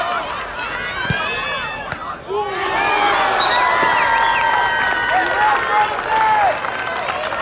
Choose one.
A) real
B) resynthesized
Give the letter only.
A